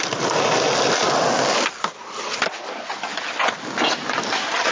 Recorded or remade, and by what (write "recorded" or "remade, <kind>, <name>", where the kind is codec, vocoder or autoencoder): recorded